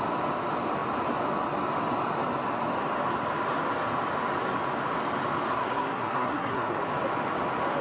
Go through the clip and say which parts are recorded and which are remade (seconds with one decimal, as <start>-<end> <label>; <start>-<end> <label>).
0.0-5.5 recorded; 5.5-6.8 remade; 6.8-7.8 recorded